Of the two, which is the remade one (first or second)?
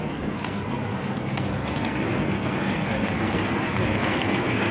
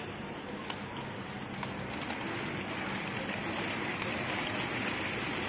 first